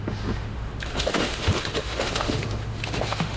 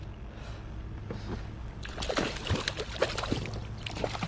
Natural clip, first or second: second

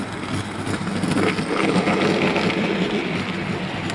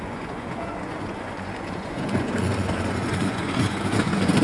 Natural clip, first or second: first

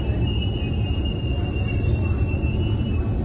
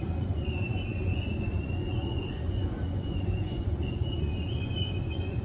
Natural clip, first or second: first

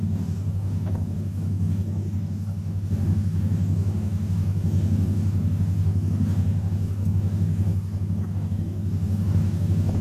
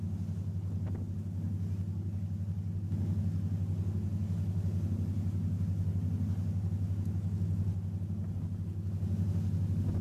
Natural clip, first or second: second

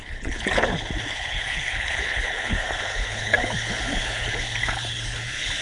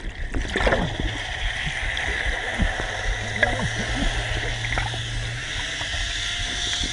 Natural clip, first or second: second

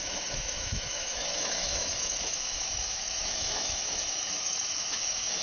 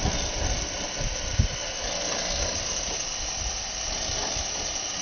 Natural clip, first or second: second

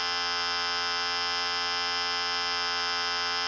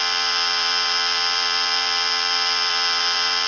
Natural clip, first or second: first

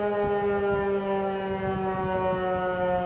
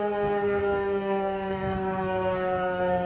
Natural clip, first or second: first